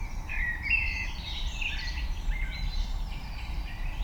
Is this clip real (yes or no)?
no